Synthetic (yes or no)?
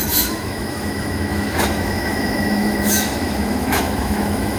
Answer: yes